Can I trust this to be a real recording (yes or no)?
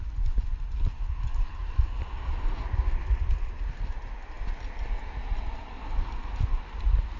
yes